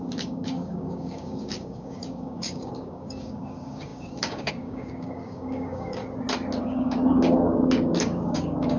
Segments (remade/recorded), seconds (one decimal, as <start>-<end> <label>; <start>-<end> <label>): 0.0-6.0 remade; 6.0-6.6 recorded; 6.6-8.8 remade